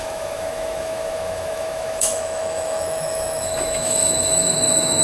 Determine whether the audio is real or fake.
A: fake